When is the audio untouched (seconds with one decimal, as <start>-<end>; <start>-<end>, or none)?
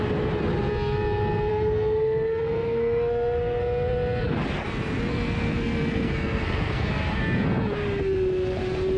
0.0-1.5; 3.6-5.1; 6.9-9.0